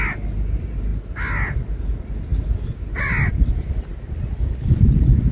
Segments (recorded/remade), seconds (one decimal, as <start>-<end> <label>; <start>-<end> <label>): 0.0-5.3 recorded